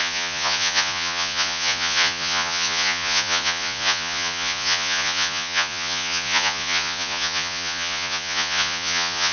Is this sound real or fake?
fake